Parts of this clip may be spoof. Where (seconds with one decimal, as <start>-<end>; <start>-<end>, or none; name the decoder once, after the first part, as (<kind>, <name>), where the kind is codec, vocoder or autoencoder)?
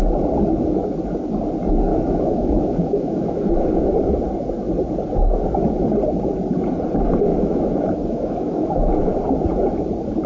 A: 1.9-3.5 (autoencoder, DAC-VAE); 7.3-9.1